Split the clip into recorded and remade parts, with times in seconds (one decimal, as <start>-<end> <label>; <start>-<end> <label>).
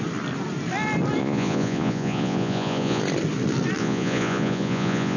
0.0-1.2 recorded; 1.2-3.0 remade; 3.0-3.8 recorded; 3.8-5.2 remade